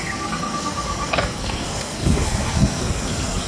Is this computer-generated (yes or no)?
yes